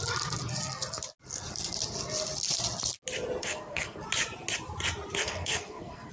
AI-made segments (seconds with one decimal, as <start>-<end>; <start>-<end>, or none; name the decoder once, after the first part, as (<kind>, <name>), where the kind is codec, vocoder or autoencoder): 3.4-4.0 (codec, SNAC); 5.2-6.1